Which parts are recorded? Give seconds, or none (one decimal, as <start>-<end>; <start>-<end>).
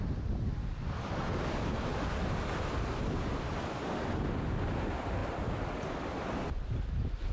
0.0-1.9; 4.2-5.2; 6.1-7.3